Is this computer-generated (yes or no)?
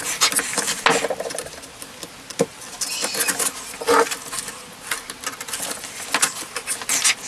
no